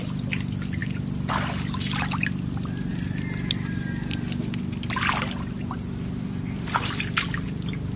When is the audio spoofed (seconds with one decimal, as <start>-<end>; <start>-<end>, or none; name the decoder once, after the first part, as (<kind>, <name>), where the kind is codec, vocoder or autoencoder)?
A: none